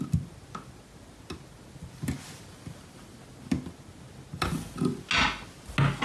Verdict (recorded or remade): recorded